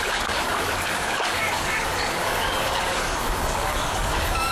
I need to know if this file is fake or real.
fake